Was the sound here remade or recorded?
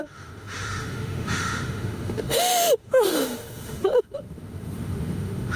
remade